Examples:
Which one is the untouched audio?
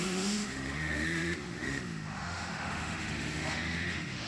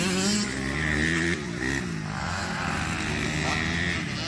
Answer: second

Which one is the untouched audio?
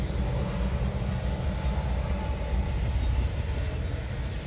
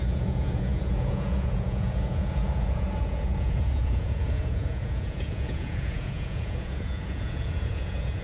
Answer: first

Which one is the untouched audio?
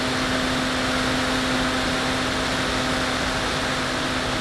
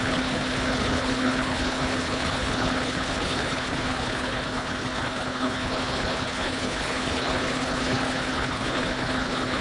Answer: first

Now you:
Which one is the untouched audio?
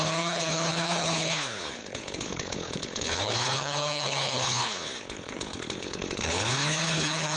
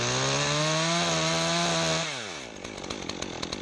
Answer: second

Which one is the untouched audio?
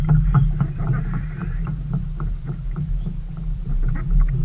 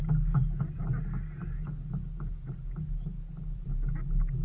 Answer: second